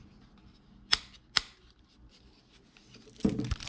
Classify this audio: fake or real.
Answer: real